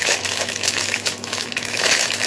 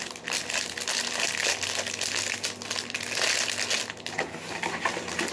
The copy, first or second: first